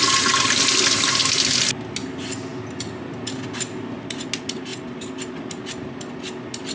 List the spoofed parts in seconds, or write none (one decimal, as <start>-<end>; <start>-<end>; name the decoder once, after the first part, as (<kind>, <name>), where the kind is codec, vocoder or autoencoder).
none